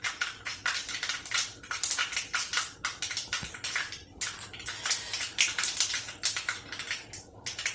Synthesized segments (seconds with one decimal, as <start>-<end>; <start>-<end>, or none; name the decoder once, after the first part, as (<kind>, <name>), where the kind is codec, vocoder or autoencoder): none